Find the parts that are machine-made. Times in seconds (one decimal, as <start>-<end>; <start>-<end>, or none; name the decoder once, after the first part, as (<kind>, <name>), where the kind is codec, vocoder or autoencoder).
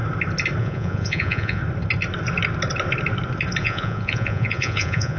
0.6-1.6 (vocoder, Vocos); 3.6-5.2